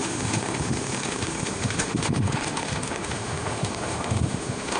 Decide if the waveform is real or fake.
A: fake